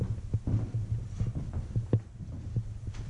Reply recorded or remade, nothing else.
recorded